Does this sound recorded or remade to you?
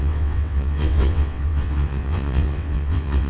remade